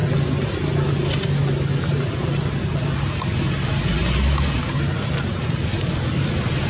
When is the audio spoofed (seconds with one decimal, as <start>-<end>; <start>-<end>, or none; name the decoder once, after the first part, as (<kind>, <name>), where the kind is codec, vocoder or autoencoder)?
none